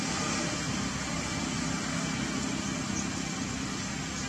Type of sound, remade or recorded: recorded